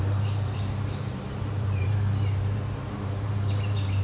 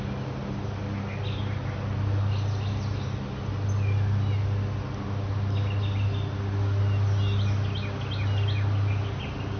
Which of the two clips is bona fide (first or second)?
second